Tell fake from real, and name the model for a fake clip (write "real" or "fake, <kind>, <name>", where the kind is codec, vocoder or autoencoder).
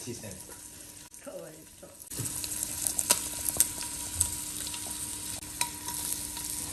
real